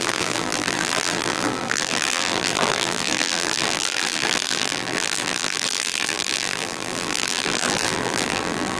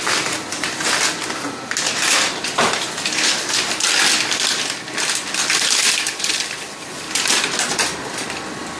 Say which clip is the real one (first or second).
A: second